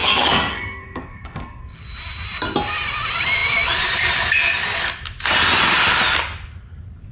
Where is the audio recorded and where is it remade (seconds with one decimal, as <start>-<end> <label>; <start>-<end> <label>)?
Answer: 0.0-1.6 remade; 1.6-7.1 recorded